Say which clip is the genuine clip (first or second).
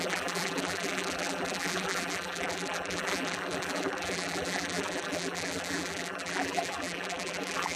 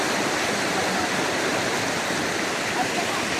second